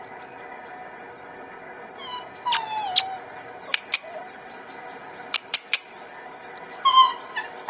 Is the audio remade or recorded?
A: recorded